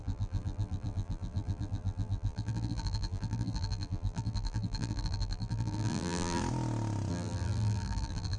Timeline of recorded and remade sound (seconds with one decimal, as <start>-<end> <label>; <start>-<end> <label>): 0.0-6.4 remade; 6.4-7.1 recorded; 7.1-8.4 remade

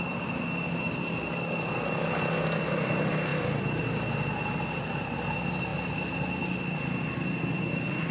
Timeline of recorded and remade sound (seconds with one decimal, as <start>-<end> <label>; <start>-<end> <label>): 0.0-5.7 recorded; 5.7-6.4 remade; 6.4-8.1 recorded

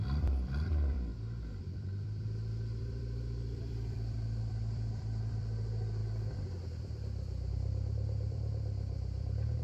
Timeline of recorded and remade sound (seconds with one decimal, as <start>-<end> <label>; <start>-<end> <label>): 0.0-1.1 remade; 1.1-1.6 recorded; 1.6-9.6 remade

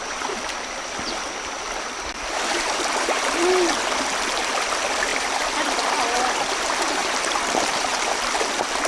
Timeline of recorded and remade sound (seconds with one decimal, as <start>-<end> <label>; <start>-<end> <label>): 0.0-2.2 recorded; 2.2-3.8 remade; 3.8-7.0 recorded; 7.0-8.1 remade; 8.1-8.9 recorded

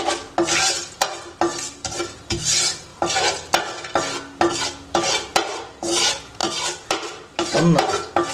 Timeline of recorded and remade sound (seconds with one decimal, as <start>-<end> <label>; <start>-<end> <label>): 0.0-1.5 recorded; 1.5-2.0 remade; 2.0-6.4 recorded; 6.4-7.6 remade; 7.6-8.3 recorded

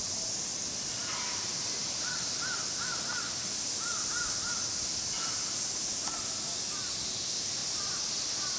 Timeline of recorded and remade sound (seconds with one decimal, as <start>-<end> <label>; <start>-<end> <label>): 0.0-7.6 recorded; 7.6-8.1 remade; 8.1-8.6 recorded